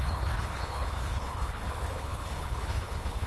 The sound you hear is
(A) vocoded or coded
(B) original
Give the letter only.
A